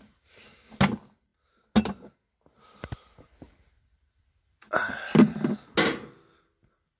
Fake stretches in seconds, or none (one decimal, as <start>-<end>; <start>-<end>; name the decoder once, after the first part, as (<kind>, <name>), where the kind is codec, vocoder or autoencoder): none